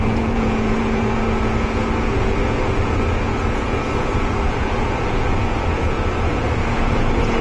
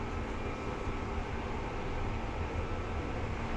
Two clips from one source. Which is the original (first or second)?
second